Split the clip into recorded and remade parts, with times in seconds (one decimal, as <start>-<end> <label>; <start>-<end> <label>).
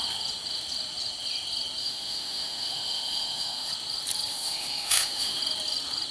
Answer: 0.0-1.8 recorded; 1.8-3.7 remade; 3.7-4.3 recorded; 4.3-5.4 remade; 5.4-6.1 recorded